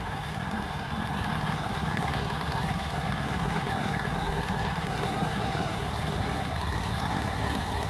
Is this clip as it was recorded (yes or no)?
no